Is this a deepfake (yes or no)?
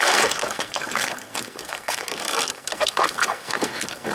yes